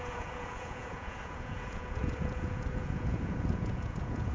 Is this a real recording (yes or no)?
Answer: no